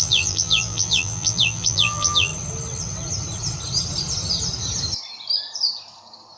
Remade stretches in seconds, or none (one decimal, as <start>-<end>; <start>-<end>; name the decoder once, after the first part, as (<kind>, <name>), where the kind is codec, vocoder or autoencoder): 0.0-2.3 (vocoder, BigVGAN v2)